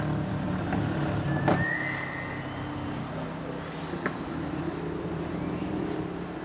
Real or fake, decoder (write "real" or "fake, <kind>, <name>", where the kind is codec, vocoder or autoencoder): real